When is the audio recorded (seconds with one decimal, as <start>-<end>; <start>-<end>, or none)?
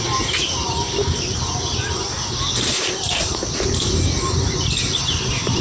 0.0-5.6